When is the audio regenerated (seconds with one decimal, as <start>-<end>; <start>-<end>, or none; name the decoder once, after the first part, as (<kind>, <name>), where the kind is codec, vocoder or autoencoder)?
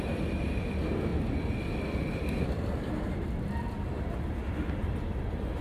none